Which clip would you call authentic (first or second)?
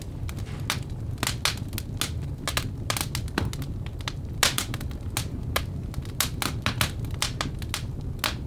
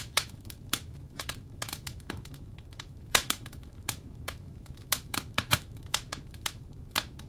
first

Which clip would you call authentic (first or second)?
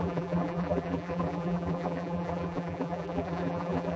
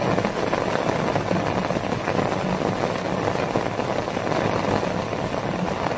second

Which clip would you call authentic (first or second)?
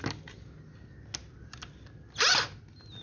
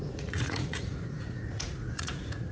first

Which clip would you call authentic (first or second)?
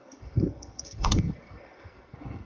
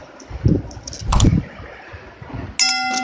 second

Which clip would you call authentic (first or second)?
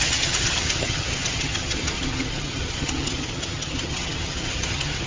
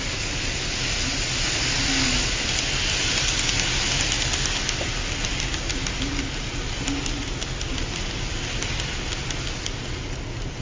second